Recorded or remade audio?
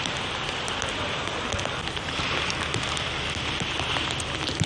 recorded